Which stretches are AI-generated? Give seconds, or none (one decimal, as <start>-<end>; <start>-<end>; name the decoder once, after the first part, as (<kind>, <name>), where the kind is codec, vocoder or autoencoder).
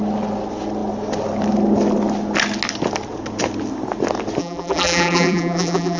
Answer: 4.4-6.0 (vocoder, BigVGAN v2)